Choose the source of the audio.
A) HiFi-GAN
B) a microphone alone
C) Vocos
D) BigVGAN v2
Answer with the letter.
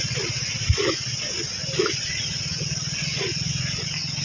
B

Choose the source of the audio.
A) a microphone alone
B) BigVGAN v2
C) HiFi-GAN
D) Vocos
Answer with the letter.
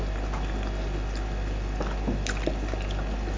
A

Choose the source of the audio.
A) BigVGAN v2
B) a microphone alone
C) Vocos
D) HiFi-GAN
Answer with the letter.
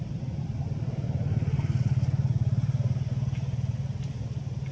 B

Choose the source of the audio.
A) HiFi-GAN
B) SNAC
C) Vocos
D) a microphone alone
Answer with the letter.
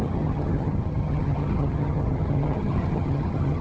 A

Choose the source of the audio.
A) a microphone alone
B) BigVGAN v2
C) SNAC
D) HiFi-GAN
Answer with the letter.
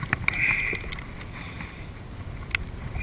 A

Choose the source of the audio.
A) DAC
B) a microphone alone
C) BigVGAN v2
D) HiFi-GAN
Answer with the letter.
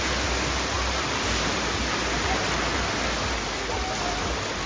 B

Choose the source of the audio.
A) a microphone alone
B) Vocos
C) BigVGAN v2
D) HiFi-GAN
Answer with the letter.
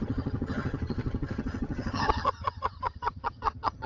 D